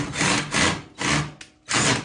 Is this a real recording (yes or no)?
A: yes